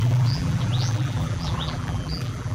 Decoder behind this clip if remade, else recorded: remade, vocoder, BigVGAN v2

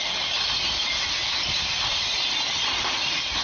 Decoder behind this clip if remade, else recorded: remade, vocoder, BigVGAN v2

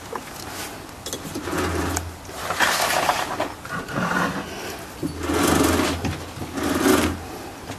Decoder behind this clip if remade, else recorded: recorded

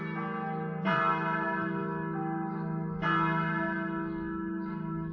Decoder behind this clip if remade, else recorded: recorded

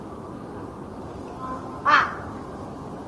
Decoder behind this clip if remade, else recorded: recorded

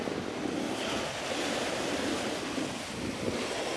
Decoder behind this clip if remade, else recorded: recorded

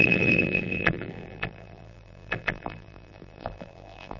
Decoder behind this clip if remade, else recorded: remade, vocoder, BigVGAN v2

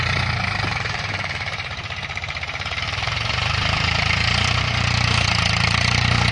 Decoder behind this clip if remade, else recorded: remade, vocoder, BigVGAN v2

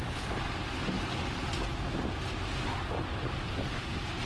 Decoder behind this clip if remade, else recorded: recorded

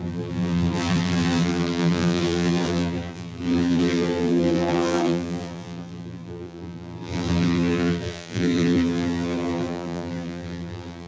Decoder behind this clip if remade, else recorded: remade, vocoder, BigVGAN v2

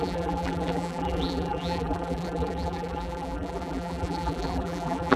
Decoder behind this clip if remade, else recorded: remade, vocoder, BigVGAN v2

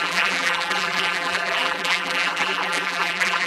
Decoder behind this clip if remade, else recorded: remade, vocoder, BigVGAN v2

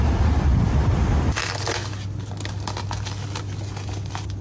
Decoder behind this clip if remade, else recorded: recorded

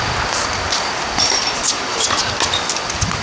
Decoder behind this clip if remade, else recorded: recorded